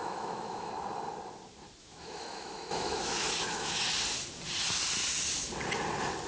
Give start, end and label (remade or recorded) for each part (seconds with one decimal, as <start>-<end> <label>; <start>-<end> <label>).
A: 0.0-0.7 remade; 0.7-1.8 recorded; 1.8-3.8 remade; 3.8-6.3 recorded